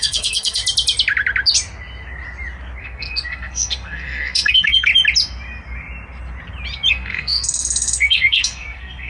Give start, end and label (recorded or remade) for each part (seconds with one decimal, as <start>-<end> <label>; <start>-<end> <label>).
0.0-0.6 remade; 0.6-2.8 recorded; 2.8-4.9 remade; 4.9-6.9 recorded; 6.9-9.1 remade